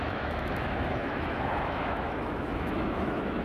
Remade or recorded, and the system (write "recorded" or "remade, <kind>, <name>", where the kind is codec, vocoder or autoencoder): remade, autoencoder, DAC-VAE